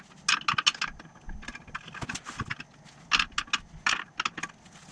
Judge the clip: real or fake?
real